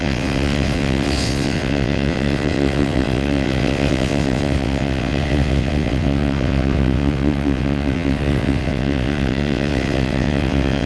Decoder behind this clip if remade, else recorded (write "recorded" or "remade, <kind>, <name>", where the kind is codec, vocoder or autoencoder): remade, vocoder, WaveNeXt